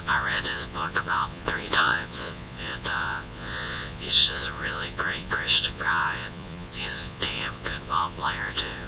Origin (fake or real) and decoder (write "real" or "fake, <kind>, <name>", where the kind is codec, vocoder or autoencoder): fake, vocoder, Vocos